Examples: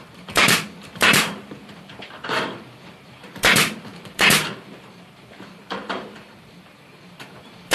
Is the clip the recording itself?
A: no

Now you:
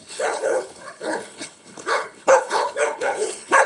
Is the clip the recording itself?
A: no